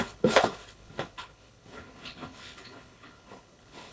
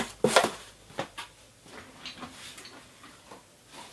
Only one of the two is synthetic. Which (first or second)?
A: first